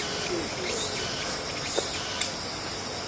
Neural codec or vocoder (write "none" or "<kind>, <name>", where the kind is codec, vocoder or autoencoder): none